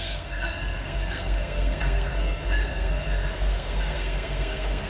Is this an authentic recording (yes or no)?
no